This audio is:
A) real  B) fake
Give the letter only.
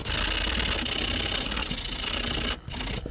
A